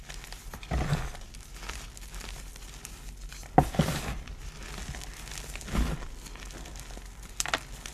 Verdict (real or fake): real